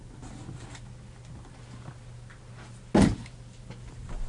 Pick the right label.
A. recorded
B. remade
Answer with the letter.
A